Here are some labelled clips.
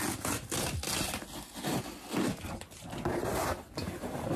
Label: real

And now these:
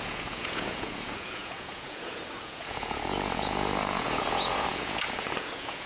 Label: fake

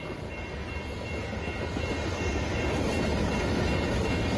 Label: real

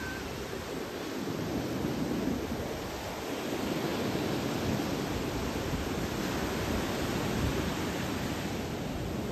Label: real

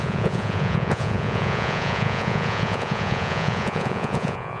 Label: fake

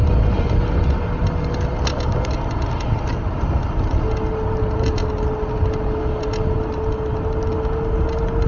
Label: real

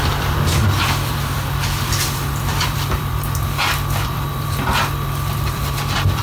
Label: fake